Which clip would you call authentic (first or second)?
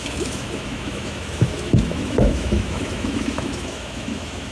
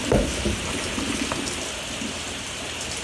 second